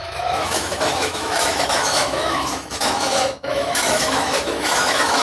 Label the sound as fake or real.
fake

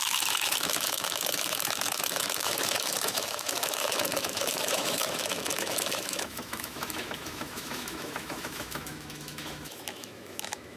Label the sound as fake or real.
fake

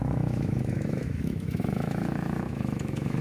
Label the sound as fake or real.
fake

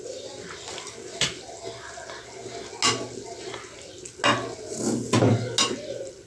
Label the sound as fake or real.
real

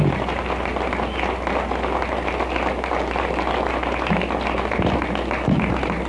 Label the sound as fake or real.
real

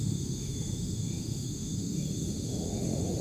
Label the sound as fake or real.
fake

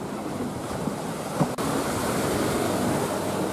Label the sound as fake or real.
real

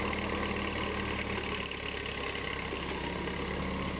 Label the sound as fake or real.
real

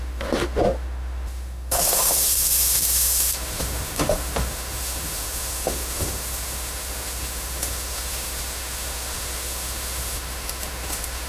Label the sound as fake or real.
fake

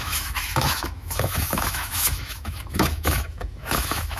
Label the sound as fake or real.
fake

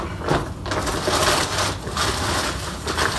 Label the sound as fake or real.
real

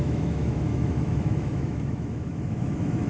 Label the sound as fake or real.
fake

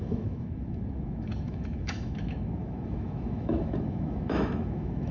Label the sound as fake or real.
fake